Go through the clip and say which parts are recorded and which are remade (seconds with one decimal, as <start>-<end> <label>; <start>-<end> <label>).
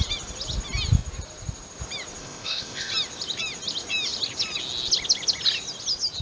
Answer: 0.0-2.2 recorded; 2.2-2.9 remade; 2.9-6.2 recorded